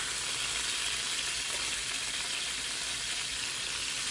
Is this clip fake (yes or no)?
no